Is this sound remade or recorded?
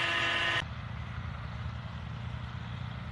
recorded